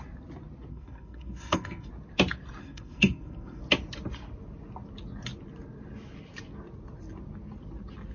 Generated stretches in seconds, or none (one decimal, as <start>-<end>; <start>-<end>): 0.7-1.9; 2.6-3.6